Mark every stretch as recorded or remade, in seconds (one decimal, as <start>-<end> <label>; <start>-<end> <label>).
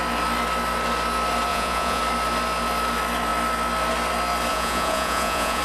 0.0-1.5 recorded; 1.5-2.0 remade; 2.0-4.5 recorded; 4.5-5.6 remade